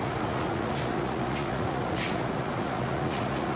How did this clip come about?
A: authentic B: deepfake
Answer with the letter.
B